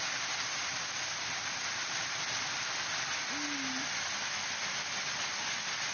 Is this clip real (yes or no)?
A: yes